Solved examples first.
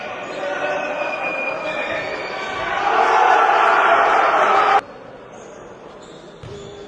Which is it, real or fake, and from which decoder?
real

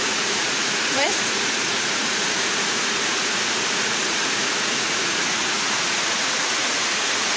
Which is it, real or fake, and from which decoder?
fake, vocoder, Vocos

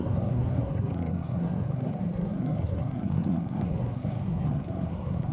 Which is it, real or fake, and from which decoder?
fake, codec, SNAC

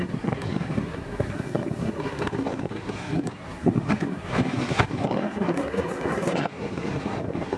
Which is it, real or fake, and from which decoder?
fake, codec, SNAC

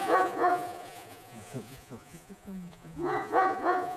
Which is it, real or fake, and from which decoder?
fake, vocoder, Vocos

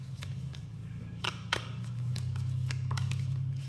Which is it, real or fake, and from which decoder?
fake, codec, DAC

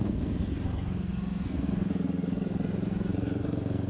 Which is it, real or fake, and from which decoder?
fake, codec, SNAC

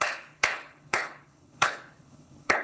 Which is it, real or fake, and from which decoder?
fake, codec, HILCodec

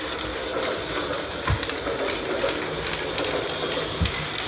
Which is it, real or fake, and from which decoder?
real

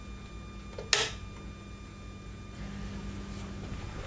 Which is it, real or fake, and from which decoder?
real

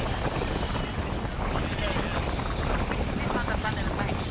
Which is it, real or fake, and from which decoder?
real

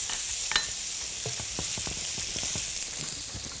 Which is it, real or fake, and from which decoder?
real